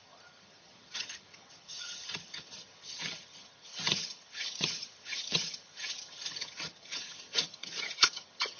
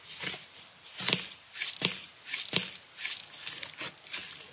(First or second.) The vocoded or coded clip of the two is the first